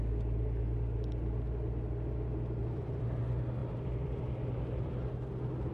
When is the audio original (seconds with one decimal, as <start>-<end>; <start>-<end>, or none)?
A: 0.0-2.6; 3.2-3.6; 4.9-5.7